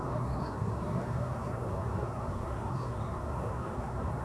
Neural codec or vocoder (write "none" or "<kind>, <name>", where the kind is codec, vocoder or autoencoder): codec, SNAC